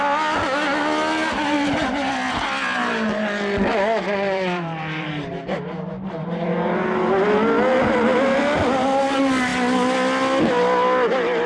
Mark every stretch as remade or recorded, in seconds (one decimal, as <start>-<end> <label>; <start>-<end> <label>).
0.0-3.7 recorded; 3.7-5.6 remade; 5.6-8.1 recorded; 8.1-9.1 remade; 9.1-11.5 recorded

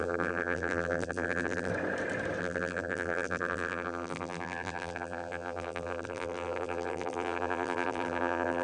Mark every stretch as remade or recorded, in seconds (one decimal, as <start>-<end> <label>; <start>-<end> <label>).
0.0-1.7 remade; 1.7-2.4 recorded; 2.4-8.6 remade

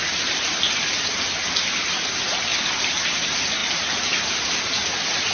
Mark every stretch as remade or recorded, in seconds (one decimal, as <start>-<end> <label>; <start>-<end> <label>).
0.0-5.3 recorded

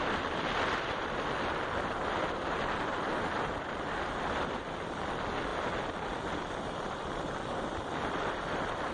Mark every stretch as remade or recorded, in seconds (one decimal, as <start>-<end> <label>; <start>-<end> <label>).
0.0-8.9 remade

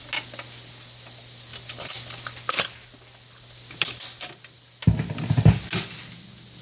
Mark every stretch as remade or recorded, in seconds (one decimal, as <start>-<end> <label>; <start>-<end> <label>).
0.0-1.5 recorded; 1.5-4.0 remade; 4.0-6.6 recorded

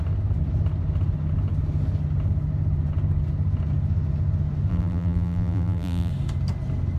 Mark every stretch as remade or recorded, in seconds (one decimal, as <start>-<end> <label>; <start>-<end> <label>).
0.0-4.7 recorded; 4.7-6.1 remade; 6.1-7.0 recorded

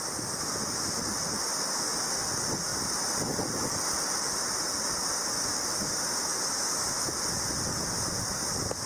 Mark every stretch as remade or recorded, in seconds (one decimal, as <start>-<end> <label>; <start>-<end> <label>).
0.0-8.9 recorded